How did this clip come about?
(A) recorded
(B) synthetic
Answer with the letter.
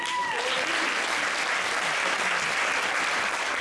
B